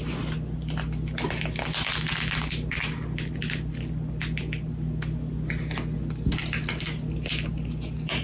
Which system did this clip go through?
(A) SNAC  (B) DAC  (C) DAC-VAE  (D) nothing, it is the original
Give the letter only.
D